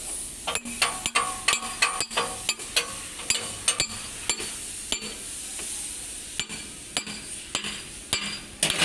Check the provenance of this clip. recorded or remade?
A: recorded